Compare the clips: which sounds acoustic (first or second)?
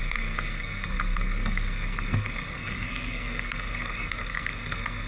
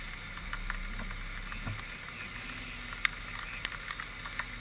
second